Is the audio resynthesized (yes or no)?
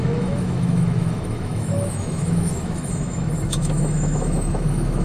yes